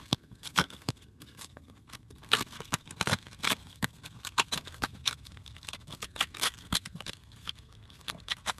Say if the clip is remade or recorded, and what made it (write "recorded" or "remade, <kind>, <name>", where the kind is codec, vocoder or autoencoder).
remade, codec, SNAC